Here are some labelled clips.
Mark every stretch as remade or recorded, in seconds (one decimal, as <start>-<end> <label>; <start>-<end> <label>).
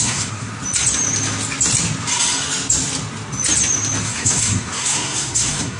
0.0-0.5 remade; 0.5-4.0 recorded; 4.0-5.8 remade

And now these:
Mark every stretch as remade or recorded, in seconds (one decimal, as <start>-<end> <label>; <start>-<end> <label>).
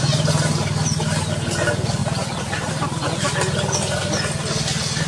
0.0-5.1 recorded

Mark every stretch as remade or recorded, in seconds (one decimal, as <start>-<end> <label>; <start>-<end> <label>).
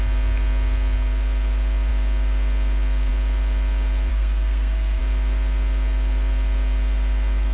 0.0-4.1 recorded; 4.1-5.0 remade; 5.0-7.5 recorded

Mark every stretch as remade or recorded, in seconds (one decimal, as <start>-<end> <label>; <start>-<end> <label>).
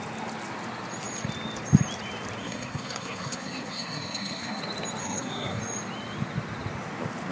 0.0-2.4 recorded; 2.4-4.6 remade; 4.6-5.0 recorded; 5.0-5.6 remade; 5.6-7.3 recorded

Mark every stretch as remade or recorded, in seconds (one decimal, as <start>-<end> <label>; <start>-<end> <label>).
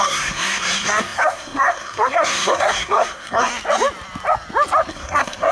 0.0-3.5 remade; 3.5-4.9 recorded; 4.9-5.5 remade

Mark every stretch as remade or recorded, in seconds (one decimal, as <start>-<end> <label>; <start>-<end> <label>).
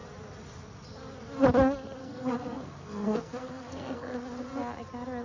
0.0-2.0 recorded; 2.0-4.1 remade; 4.1-5.2 recorded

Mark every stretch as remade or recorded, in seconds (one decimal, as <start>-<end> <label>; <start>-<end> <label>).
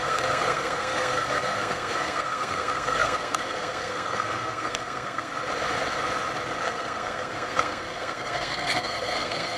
0.0-5.3 remade; 5.3-6.6 recorded; 6.6-9.6 remade